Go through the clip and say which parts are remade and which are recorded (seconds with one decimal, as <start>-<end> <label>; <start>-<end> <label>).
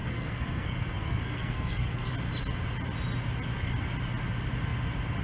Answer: 0.0-2.1 remade; 2.1-5.2 recorded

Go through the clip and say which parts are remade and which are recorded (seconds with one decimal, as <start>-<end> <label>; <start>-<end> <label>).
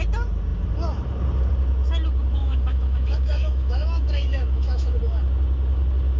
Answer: 0.0-2.4 recorded; 2.4-5.0 remade; 5.0-6.2 recorded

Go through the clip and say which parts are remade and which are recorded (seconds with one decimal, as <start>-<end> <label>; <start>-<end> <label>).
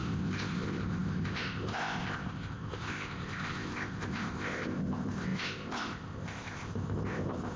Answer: 0.0-7.6 remade